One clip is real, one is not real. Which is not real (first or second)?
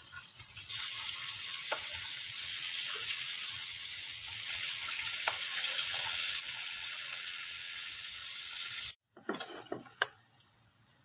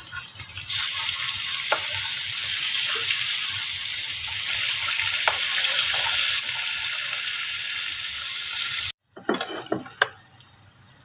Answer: first